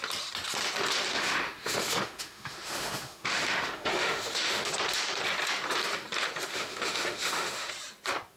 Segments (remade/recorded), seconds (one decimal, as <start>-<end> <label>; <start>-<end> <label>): 0.0-1.1 recorded; 1.1-4.7 remade; 4.7-6.5 recorded; 6.5-7.7 remade; 7.7-8.4 recorded